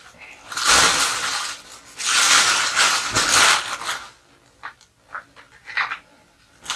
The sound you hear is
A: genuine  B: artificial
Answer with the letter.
A